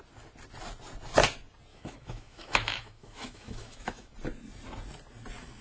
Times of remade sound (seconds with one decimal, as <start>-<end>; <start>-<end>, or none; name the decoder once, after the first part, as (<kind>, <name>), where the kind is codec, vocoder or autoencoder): 1.7-4.1 (autoencoder, DAC-VAE)